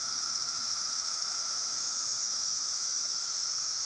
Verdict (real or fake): fake